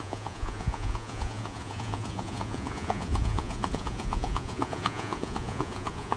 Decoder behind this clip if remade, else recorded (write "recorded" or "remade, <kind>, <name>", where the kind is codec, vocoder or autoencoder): remade, vocoder, Vocos